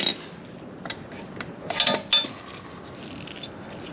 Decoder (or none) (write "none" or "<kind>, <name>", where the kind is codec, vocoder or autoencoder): none